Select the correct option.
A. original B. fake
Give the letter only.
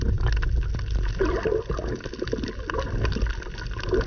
A